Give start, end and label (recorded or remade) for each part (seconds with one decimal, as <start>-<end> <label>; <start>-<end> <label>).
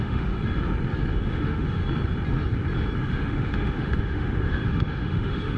0.0-0.4 remade; 0.4-1.1 recorded; 1.1-1.8 remade; 1.8-3.0 recorded; 3.0-5.6 remade